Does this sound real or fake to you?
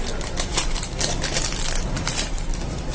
fake